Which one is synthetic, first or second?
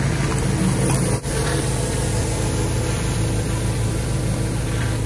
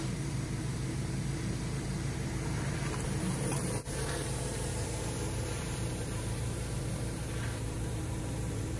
second